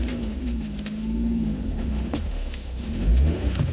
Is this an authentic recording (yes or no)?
no